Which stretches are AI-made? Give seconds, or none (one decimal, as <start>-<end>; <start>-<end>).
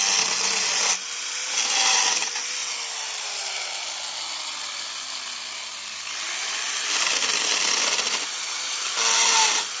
none